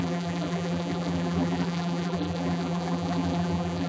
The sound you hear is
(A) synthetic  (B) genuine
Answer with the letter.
A